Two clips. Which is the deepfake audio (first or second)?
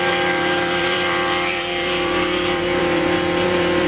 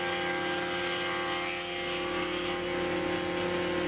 first